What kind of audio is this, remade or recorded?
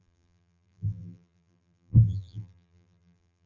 remade